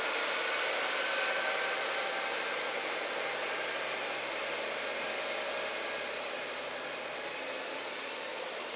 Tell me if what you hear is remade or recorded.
recorded